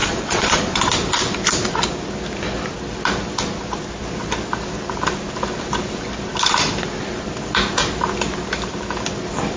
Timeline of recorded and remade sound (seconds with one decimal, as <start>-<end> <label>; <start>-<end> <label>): 0.0-0.8 remade; 0.8-9.6 recorded